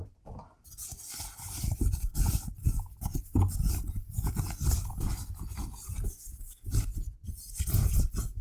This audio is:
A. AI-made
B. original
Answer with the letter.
B